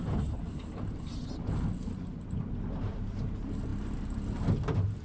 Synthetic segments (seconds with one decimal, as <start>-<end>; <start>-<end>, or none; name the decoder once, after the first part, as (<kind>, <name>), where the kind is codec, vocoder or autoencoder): none